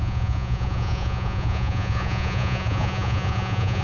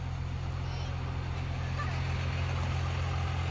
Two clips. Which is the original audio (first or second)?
second